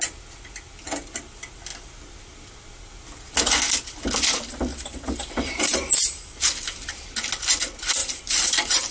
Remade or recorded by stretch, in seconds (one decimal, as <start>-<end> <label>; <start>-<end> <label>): 0.0-4.7 recorded; 4.7-6.9 remade; 6.9-8.0 recorded; 8.0-8.9 remade